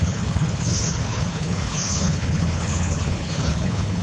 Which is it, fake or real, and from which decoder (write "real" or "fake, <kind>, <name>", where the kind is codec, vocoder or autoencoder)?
fake, codec, HILCodec